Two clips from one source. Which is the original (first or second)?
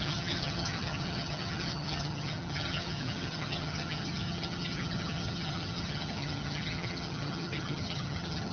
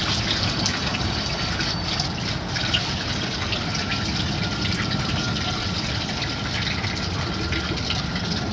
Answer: second